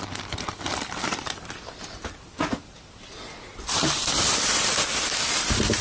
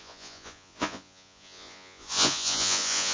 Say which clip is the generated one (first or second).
second